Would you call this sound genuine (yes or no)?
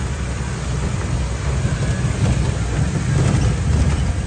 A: yes